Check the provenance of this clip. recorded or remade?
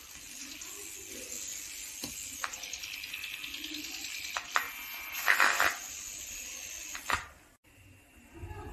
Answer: recorded